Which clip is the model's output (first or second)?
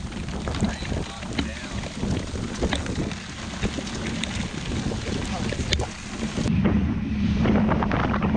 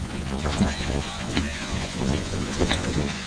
second